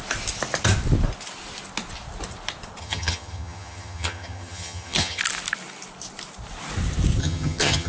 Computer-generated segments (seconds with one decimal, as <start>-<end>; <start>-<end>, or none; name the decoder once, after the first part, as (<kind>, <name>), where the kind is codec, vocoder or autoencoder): 2.8-5.2 (vocoder, HiFi-GAN); 7.2-7.9